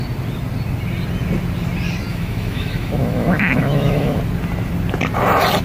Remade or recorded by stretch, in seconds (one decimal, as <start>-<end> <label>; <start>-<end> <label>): 0.0-2.1 recorded; 2.1-4.2 remade; 4.2-5.6 recorded